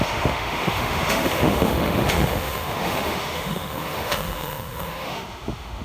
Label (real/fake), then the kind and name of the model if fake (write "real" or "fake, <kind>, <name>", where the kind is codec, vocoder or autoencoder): fake, autoencoder, DAC-VAE